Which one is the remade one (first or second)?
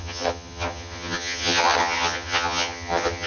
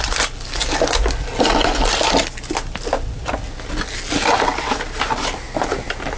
first